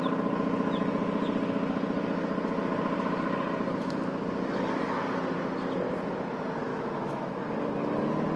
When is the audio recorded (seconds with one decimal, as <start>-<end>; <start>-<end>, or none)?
0.0-6.7; 7.3-8.4